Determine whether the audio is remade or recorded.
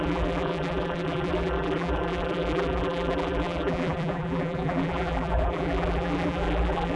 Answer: remade